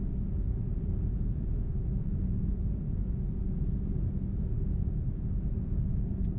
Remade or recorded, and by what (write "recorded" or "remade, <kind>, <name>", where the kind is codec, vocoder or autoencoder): remade, vocoder, Vocos